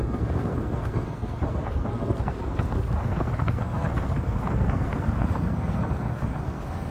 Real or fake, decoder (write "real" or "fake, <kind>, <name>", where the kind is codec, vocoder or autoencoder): fake, codec, SNAC